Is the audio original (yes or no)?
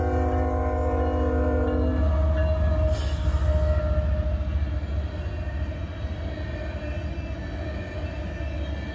yes